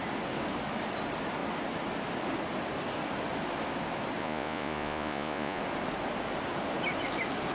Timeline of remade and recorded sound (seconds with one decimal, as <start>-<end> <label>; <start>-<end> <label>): 0.0-4.2 recorded; 4.2-5.6 remade; 5.6-7.5 recorded